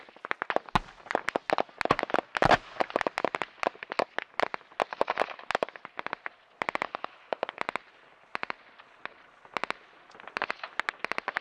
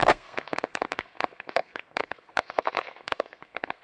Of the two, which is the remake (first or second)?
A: second